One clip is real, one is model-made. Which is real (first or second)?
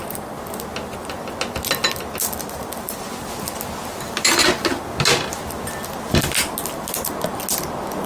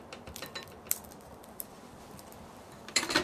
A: first